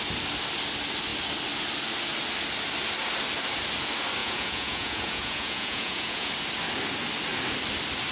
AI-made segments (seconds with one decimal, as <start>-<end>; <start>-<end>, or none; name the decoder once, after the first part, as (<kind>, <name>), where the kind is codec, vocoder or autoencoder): 4.2-6.3 (vocoder, Vocos)